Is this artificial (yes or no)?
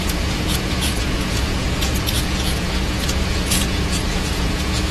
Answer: yes